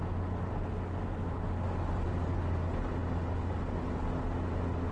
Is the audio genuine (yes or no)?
yes